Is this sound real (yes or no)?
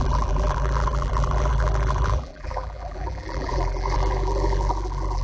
no